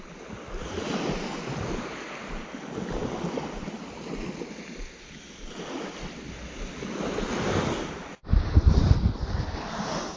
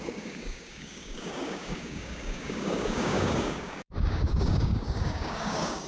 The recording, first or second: first